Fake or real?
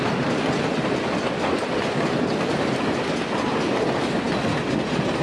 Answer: real